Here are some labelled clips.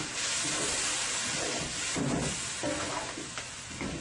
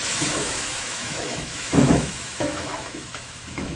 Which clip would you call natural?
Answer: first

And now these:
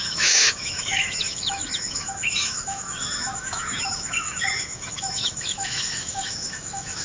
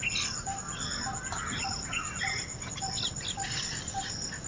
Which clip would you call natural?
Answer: second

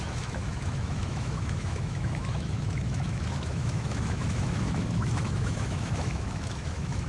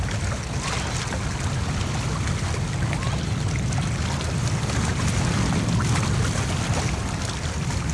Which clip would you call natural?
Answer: second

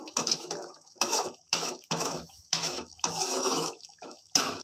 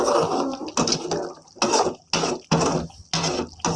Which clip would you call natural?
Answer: second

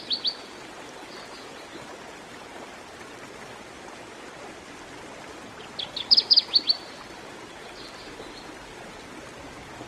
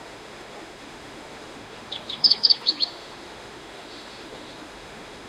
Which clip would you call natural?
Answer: first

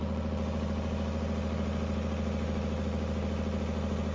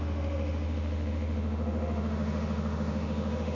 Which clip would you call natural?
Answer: first